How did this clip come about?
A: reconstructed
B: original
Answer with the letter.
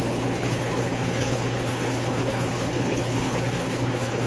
A